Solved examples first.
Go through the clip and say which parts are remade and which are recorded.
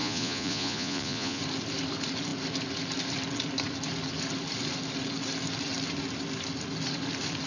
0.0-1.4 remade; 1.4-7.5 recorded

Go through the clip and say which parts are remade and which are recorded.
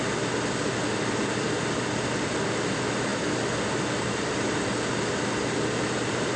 0.0-6.4 recorded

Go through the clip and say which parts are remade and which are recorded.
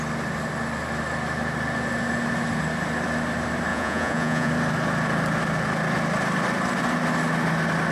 0.0-3.7 recorded; 3.7-4.5 remade; 4.5-7.9 recorded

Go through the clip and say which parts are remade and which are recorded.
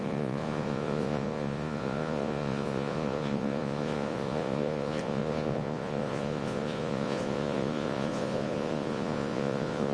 0.0-9.9 remade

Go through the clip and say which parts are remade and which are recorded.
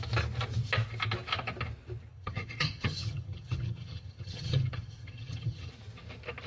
0.0-2.1 recorded; 2.1-5.7 remade; 5.7-6.5 recorded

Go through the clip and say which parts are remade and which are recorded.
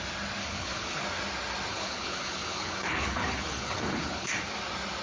0.0-0.4 recorded; 0.4-1.0 remade; 1.0-1.7 recorded; 1.7-4.3 remade; 4.3-5.0 recorded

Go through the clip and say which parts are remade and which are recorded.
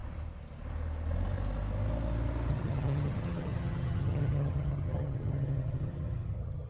0.0-2.5 recorded; 2.5-6.7 remade